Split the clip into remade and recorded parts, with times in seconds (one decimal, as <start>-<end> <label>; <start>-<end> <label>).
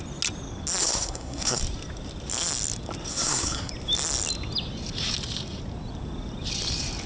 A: 0.0-0.8 recorded; 0.8-1.6 remade; 1.6-3.1 recorded; 3.1-3.7 remade; 3.7-7.1 recorded